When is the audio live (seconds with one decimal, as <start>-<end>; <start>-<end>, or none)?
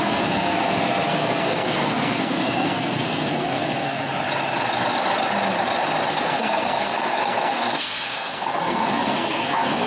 4.1-6.1